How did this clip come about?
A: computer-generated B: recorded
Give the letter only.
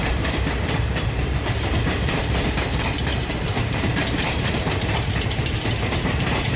A